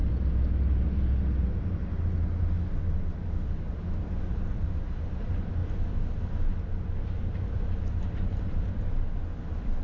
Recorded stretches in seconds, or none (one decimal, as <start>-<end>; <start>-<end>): 0.0-4.0; 5.6-7.2